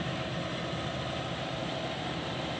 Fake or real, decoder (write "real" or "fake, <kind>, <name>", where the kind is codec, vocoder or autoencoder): real